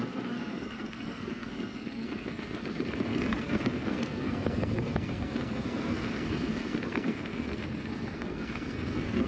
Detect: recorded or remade remade